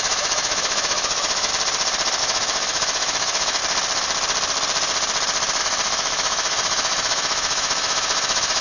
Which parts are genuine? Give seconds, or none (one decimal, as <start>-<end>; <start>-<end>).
1.5-2.2; 3.6-5.6